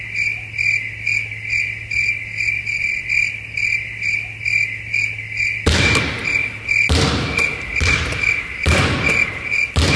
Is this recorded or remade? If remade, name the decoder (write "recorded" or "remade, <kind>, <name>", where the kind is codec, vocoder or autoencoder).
recorded